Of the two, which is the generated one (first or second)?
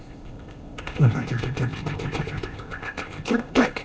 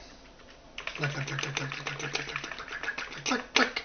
first